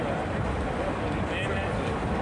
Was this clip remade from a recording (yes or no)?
no